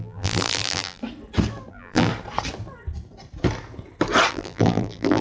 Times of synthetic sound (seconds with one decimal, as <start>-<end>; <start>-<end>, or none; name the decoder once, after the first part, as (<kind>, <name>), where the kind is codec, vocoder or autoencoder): 0.0-1.0 (vocoder, BigVGAN v2); 1.7-2.1; 4.3-5.2